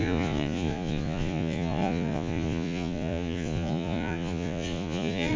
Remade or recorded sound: remade